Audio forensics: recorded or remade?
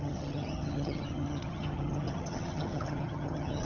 remade